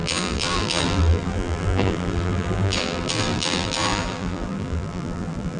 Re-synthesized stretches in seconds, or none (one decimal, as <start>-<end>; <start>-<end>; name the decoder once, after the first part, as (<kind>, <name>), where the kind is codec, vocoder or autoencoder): 0.0-5.6 (vocoder, BigVGAN v2)